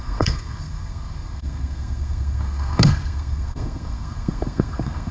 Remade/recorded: remade